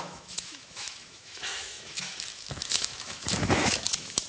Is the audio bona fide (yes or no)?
no